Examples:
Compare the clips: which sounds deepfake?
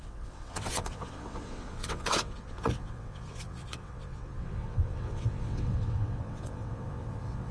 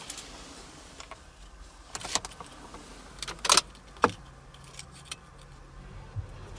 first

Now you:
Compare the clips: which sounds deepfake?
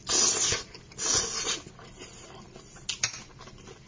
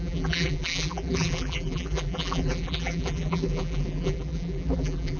second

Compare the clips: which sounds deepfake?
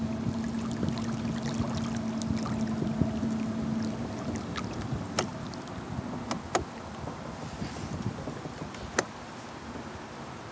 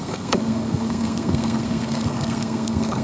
second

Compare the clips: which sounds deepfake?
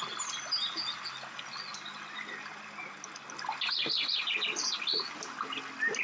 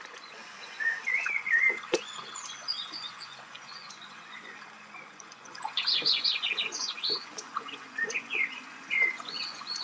second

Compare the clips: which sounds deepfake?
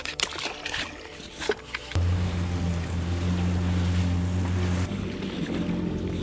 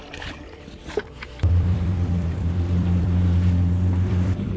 second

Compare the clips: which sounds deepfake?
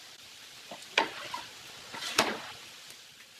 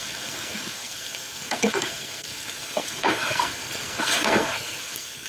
second